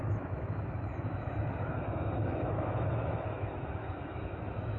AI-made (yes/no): yes